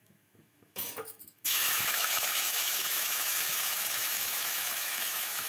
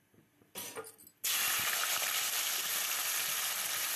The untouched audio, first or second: second